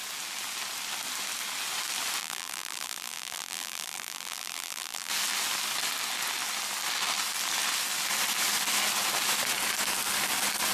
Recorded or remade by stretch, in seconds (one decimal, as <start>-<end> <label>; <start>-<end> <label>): 0.0-2.2 recorded; 2.2-5.1 remade; 5.1-10.7 recorded